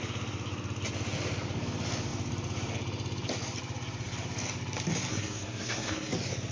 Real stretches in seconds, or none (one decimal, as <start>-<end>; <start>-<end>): 0.0-5.1; 6.1-6.5